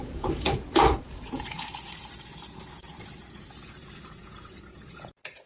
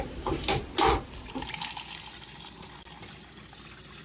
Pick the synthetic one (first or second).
first